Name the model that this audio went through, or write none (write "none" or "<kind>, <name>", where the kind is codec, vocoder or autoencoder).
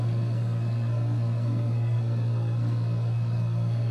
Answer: codec, SNAC